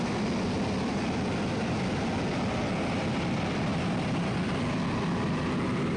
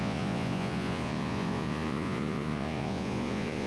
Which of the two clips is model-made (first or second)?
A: second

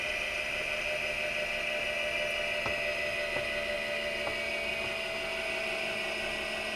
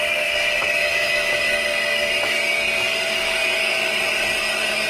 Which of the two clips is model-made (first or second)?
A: second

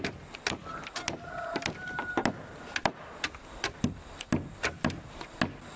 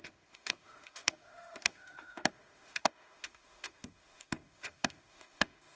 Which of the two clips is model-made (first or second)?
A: second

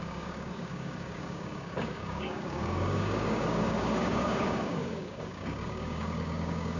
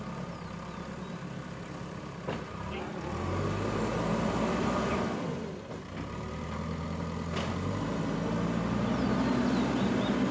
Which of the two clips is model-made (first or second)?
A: first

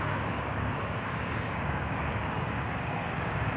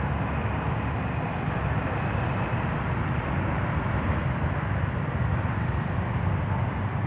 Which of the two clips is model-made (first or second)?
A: first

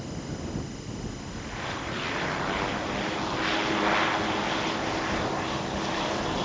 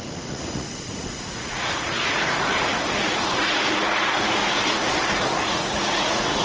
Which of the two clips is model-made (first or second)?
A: second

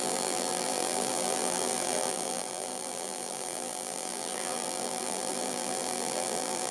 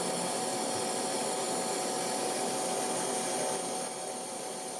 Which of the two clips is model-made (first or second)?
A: first